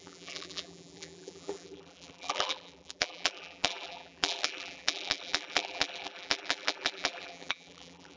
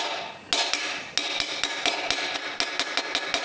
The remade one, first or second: first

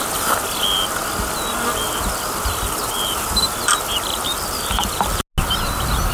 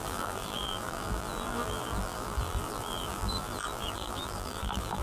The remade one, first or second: second